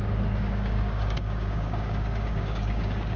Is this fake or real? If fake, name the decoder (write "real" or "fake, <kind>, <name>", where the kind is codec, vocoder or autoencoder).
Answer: fake, codec, DAC